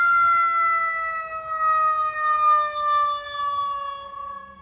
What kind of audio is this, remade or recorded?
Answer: recorded